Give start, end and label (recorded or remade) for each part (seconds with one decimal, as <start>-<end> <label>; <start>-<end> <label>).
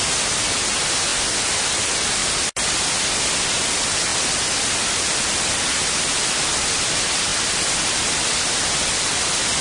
0.0-9.6 recorded